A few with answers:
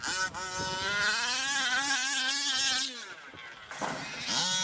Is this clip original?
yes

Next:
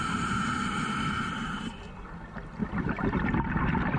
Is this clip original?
yes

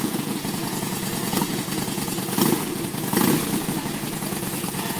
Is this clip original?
no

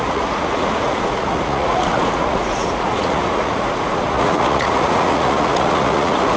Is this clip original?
no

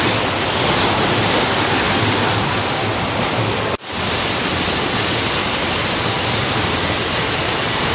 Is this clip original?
yes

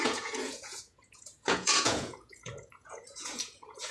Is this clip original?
no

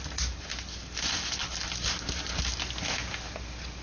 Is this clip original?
yes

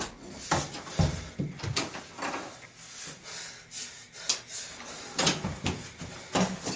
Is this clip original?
yes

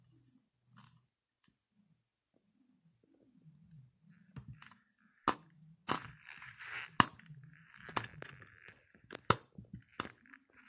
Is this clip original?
yes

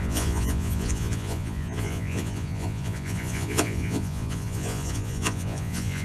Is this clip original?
no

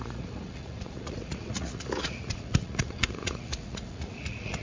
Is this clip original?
no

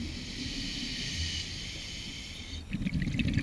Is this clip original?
yes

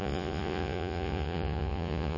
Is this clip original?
no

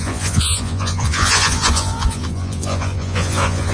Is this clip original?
no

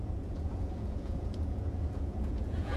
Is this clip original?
no